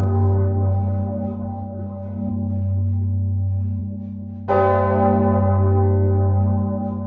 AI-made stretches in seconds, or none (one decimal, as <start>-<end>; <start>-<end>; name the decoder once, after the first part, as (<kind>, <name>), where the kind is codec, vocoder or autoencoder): 0.0-2.3 (codec, DAC)